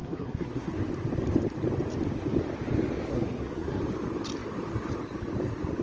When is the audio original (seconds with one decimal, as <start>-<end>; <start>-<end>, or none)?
0.7-3.1; 3.8-5.8